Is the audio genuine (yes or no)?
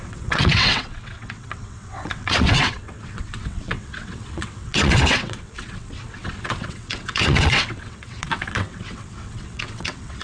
no